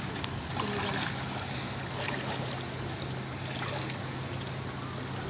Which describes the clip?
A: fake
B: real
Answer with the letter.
B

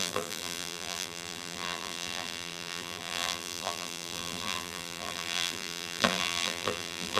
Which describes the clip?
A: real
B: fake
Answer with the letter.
B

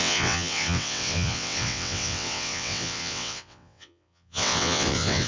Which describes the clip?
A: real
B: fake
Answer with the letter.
B